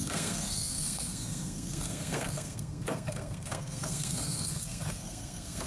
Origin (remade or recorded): remade